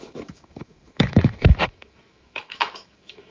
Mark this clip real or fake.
fake